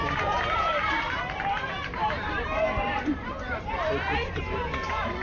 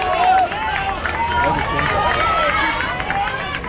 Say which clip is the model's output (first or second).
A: first